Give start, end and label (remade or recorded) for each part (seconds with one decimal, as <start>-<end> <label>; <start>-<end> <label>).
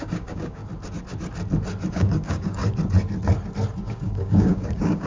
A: 0.0-0.6 remade; 0.6-1.9 recorded; 1.9-2.6 remade; 2.6-3.8 recorded; 3.8-5.1 remade